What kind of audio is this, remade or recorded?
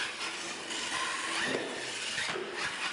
recorded